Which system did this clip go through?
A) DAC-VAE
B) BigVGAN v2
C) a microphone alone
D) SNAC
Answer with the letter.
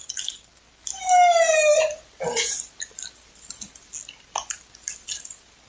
C